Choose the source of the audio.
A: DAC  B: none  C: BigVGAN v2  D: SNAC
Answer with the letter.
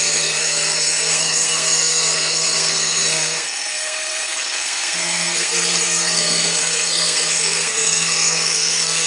D